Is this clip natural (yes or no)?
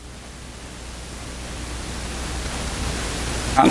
yes